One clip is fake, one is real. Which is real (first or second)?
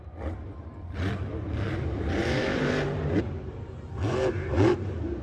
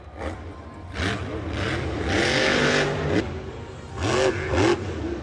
second